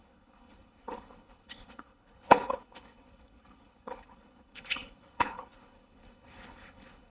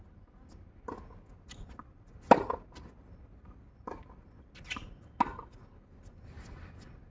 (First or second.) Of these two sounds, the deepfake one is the first